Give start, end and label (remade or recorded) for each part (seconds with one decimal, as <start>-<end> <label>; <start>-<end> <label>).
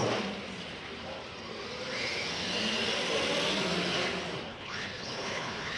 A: 0.0-4.5 recorded; 4.5-5.8 remade